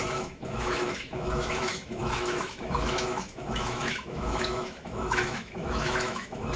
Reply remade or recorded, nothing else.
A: remade